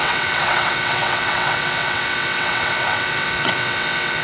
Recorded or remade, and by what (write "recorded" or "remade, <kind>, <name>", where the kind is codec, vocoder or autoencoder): remade, vocoder, WaveNeXt